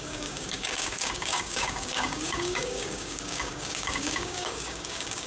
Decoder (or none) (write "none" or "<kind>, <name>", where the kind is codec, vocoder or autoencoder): codec, DAC